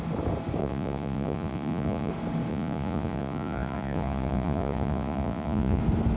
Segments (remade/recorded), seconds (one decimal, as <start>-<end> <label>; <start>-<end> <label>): 0.0-0.6 recorded; 0.6-2.1 remade; 2.1-2.5 recorded; 2.5-5.8 remade; 5.8-6.2 recorded